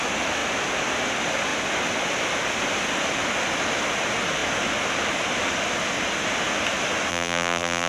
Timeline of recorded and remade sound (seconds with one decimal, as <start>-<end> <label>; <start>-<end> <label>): 0.0-7.1 recorded; 7.1-7.9 remade